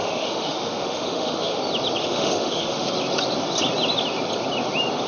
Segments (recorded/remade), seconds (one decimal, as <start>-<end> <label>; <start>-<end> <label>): 0.0-1.6 remade; 1.6-2.0 recorded; 2.0-2.9 remade; 2.9-5.1 recorded